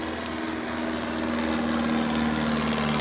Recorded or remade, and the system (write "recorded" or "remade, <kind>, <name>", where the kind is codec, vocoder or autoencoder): recorded